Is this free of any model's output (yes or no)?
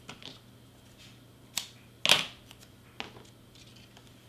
yes